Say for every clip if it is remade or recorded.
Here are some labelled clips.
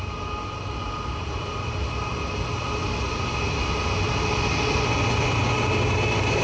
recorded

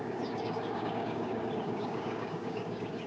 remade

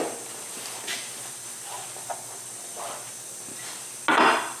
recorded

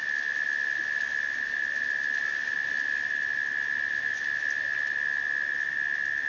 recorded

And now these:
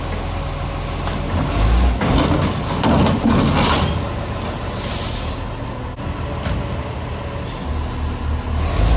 recorded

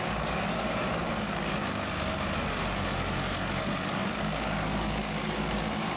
remade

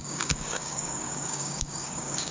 remade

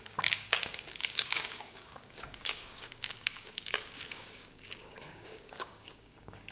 remade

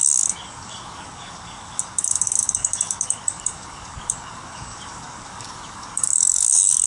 remade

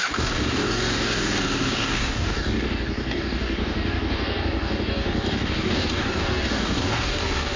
remade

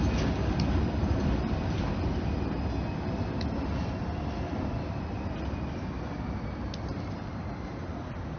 recorded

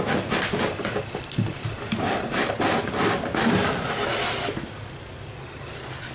recorded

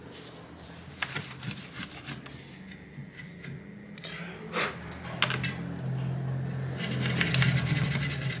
recorded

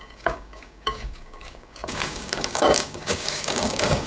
remade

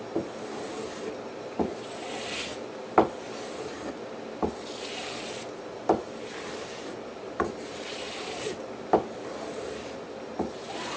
recorded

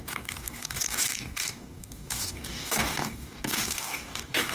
remade